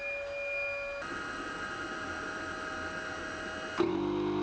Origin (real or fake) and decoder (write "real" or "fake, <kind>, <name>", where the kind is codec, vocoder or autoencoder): real